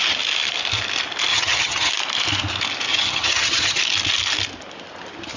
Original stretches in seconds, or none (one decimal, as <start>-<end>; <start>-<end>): 0.0-1.3; 1.9-2.9; 3.8-5.4